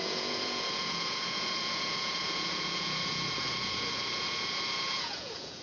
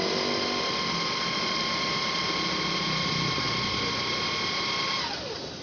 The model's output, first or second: first